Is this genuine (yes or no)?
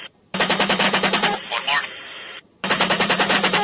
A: no